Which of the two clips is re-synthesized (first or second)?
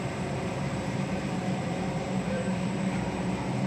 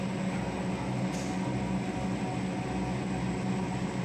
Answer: first